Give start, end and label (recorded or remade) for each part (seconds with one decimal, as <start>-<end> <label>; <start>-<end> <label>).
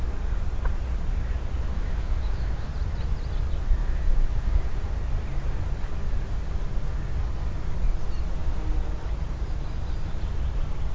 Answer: 0.0-1.7 recorded; 1.7-2.7 remade; 2.7-3.8 recorded; 3.8-4.9 remade; 4.9-10.9 recorded